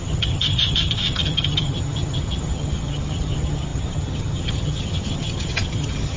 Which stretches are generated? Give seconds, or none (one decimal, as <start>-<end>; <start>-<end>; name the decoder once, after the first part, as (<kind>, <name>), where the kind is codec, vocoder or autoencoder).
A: 0.0-6.2 (vocoder, HiFi-GAN)

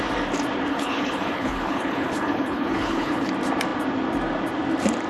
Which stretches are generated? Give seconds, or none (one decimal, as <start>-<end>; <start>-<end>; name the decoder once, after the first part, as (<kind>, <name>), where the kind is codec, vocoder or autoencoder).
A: 0.7-3.3 (codec, HILCodec)